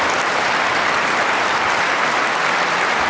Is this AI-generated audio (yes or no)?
yes